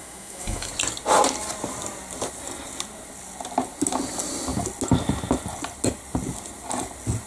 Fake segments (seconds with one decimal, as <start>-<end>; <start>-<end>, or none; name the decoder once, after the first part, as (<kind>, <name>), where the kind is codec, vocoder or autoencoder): 0.0-0.7 (autoencoder, DAC-VAE)